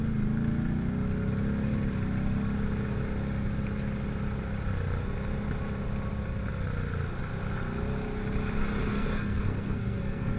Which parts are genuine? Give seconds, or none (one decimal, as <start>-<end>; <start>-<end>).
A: 0.0-8.9